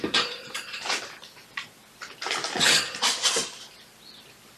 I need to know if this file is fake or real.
fake